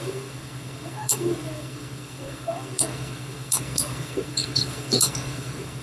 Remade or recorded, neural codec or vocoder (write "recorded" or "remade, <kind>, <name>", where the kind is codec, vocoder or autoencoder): remade, codec, SNAC